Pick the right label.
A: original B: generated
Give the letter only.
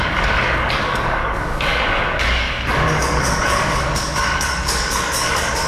B